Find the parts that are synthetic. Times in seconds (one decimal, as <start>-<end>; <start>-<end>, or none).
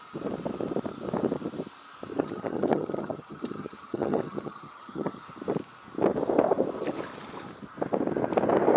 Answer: 2.1-5.2